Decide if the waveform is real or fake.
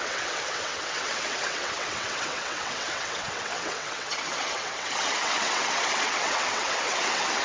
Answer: fake